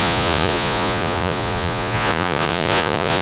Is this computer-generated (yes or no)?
yes